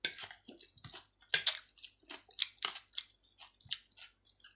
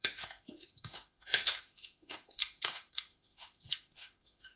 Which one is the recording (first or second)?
first